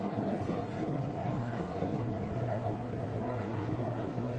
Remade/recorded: remade